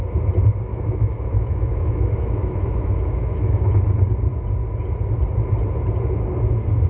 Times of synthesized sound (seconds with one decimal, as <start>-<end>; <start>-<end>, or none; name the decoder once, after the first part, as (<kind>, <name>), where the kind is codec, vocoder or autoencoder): 0.7-3.7 (autoencoder, DAC-VAE)